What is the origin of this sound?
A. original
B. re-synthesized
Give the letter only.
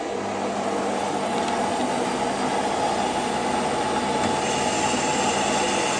A